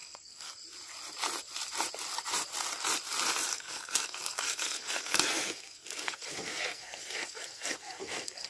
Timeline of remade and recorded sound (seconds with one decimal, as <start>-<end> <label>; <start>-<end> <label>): 0.0-0.5 remade; 0.5-3.5 recorded; 3.5-8.5 remade